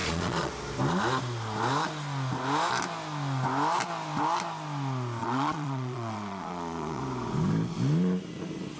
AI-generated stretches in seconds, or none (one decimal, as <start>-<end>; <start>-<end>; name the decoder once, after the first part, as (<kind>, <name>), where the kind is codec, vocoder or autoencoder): 0.0-0.5 (vocoder, Vocos); 5.2-7.0